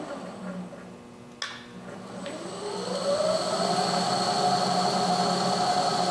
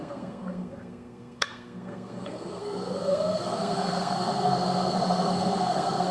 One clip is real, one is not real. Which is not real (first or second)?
second